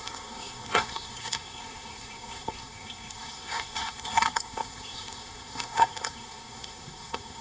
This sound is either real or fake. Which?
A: fake